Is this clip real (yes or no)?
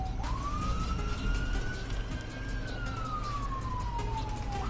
yes